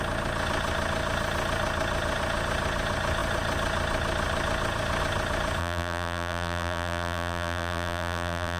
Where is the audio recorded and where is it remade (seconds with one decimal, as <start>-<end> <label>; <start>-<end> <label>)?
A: 0.0-5.6 recorded; 5.6-8.6 remade